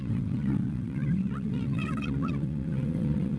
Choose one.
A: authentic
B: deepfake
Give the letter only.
B